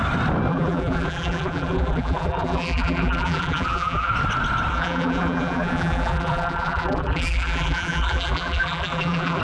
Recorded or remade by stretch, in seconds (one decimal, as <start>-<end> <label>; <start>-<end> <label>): 0.0-0.5 recorded; 0.5-4.1 remade; 4.1-4.7 recorded; 4.7-9.4 remade